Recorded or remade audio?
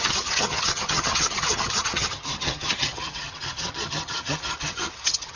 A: remade